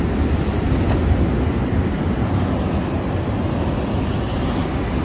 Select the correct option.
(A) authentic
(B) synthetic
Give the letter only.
A